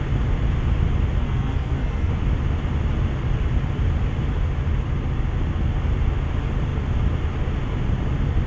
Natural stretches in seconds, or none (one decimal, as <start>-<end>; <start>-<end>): 0.0-1.2; 2.1-8.5